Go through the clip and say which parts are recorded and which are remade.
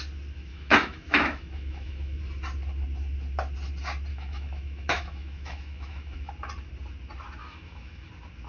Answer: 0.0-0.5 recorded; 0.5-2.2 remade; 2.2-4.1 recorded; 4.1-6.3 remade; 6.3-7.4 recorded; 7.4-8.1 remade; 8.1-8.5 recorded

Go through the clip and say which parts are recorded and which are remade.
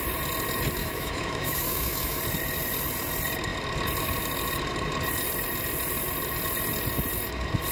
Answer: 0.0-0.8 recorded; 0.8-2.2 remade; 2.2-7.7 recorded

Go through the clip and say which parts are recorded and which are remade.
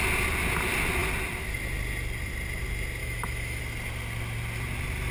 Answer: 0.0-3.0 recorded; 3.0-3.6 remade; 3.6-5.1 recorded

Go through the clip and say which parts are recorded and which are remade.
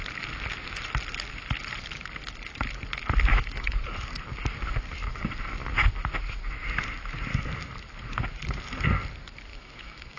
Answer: 0.0-3.3 recorded; 3.3-3.8 remade; 3.8-9.5 recorded; 9.5-10.2 remade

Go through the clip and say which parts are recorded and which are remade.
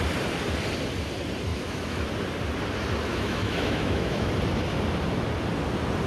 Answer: 0.0-1.5 recorded; 1.5-2.1 remade; 2.1-3.1 recorded; 3.1-4.3 remade; 4.3-6.1 recorded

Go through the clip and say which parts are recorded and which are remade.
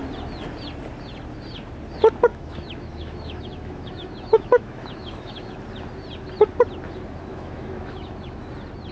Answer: 0.0-2.3 recorded; 2.3-5.6 remade; 5.6-7.3 recorded; 7.3-8.5 remade; 8.5-8.9 recorded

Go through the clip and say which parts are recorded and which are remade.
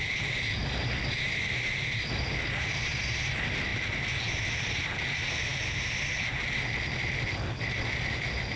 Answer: 0.0-8.6 recorded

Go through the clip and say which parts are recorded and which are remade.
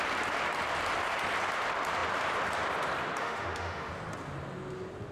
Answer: 0.0-3.2 recorded; 3.2-3.9 remade; 3.9-5.1 recorded